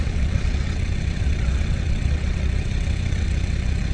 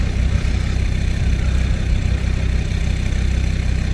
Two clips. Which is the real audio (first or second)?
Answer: second